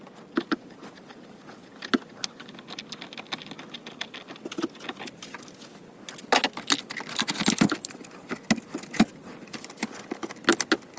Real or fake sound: real